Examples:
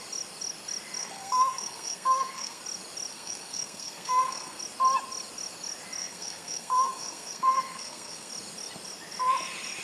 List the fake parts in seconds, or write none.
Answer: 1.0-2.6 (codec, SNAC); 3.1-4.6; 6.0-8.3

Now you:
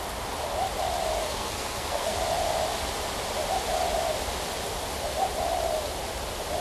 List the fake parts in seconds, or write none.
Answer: 1.2-2.2 (codec, SNAC)

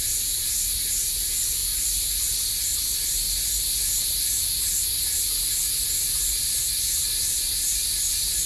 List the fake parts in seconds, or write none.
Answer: none

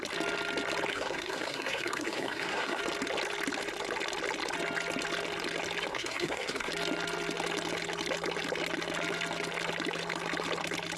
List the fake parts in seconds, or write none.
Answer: 0.9-2.8 (codec, SNAC); 5.9-6.7

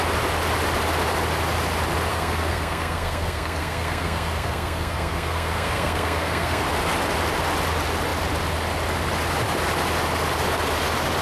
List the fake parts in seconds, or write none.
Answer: 2.1-6.6 (codec, SNAC)